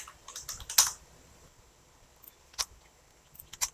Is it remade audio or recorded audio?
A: recorded